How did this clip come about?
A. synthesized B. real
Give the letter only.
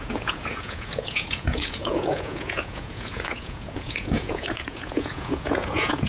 A